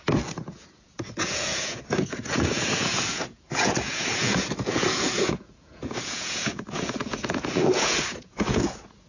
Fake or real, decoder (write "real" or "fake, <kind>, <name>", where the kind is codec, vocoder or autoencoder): fake, vocoder, Vocos